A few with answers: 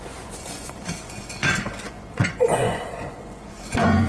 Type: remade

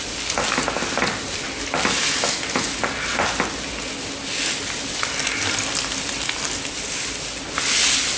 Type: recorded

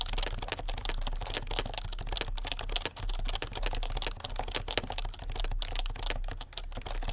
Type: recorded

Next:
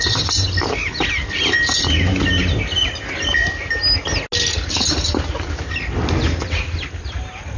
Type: recorded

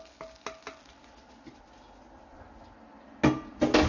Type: recorded